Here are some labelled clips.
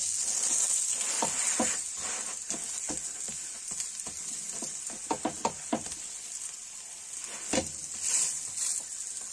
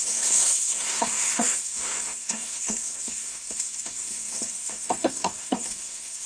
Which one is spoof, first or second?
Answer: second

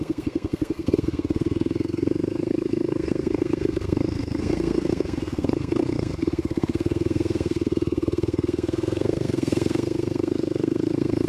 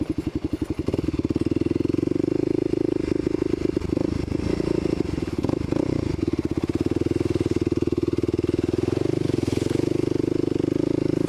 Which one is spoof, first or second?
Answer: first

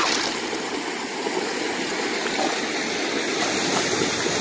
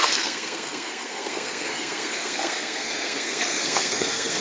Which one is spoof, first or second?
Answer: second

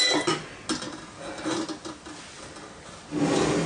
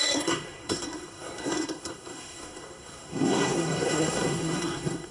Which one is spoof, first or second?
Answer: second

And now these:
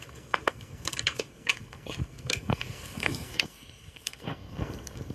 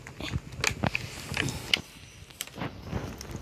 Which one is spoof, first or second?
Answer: first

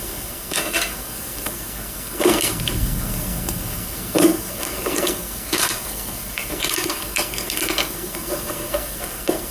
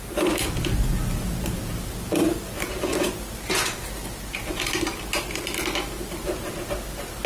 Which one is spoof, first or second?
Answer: first